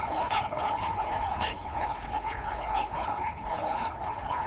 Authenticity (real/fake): fake